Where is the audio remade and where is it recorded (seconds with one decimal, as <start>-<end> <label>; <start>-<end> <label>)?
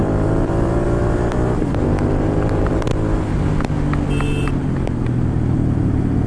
0.0-2.9 remade; 2.9-4.5 recorded; 4.5-6.3 remade